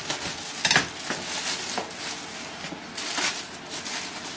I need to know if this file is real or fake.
real